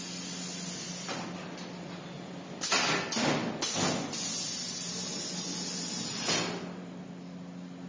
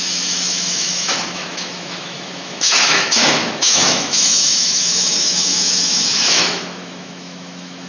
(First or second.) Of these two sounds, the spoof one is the second